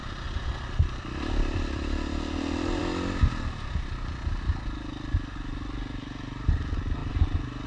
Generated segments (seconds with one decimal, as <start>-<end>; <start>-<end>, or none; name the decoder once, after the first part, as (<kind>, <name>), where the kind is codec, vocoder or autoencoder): none